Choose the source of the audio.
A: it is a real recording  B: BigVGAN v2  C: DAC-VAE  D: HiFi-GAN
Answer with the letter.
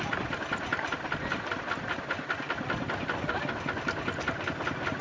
A